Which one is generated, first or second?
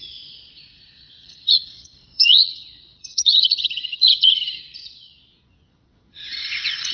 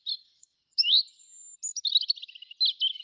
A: first